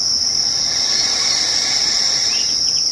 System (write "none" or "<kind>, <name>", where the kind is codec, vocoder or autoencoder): none